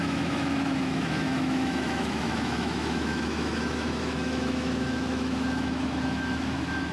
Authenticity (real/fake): fake